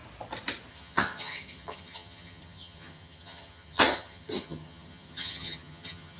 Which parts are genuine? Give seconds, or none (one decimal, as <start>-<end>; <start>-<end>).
0.0-0.7